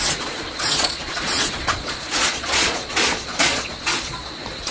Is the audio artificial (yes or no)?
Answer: yes